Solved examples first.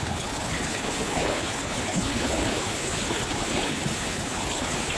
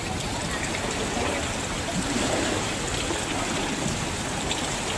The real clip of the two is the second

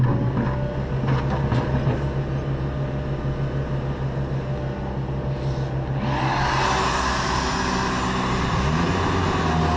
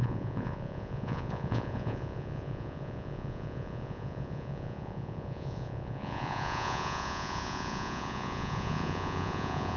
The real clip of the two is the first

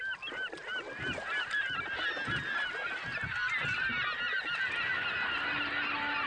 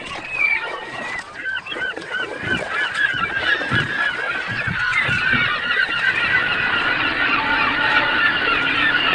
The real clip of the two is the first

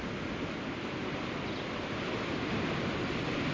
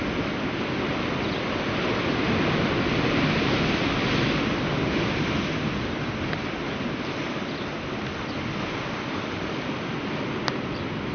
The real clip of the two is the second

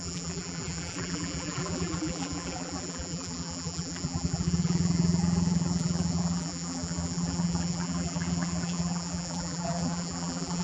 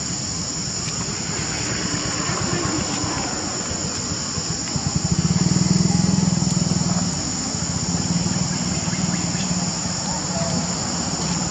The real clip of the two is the second